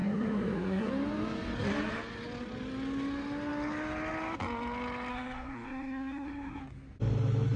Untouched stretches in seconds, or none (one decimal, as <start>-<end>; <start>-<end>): 0.9-5.1; 6.6-7.6